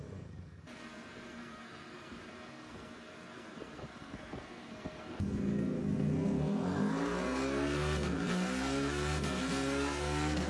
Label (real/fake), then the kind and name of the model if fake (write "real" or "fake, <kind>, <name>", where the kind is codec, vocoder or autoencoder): fake, codec, SNAC